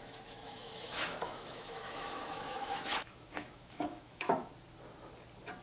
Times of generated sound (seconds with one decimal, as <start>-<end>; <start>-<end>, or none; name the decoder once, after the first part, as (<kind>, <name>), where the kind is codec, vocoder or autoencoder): 0.0-4.5 (autoencoder, DAC-VAE)